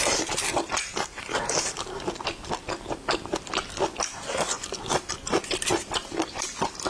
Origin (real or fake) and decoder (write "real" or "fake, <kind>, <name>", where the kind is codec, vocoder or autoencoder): fake, vocoder, BigVGAN v2